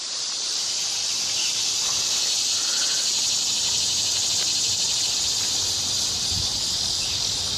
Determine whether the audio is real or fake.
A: real